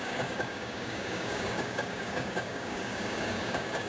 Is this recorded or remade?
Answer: remade